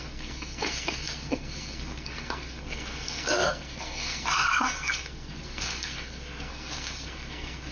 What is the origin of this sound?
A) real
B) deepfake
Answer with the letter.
B